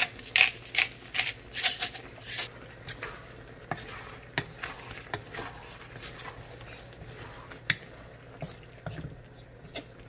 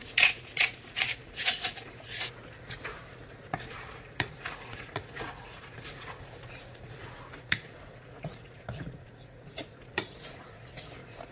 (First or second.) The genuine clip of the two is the first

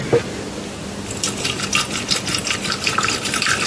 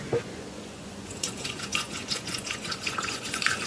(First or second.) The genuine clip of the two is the first